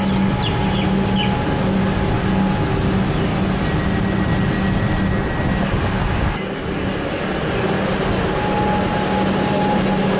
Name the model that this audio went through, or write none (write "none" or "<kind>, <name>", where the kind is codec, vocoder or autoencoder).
none